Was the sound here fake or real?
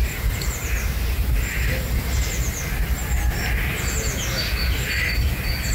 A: real